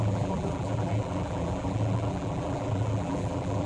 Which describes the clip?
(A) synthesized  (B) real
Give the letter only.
A